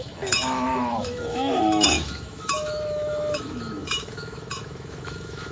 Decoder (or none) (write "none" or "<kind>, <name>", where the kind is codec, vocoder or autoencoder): autoencoder, DAC-VAE